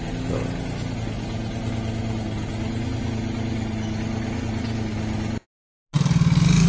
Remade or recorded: recorded